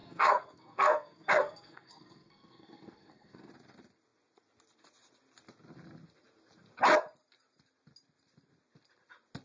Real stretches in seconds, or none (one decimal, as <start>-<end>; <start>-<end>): 3.5-9.4